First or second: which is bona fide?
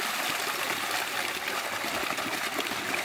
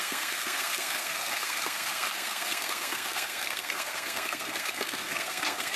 first